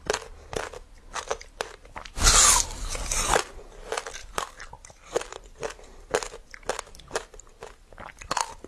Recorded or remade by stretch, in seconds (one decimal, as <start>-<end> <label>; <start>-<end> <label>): 0.0-4.2 recorded; 4.2-5.8 remade; 5.8-8.7 recorded